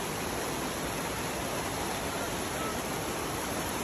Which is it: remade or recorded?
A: recorded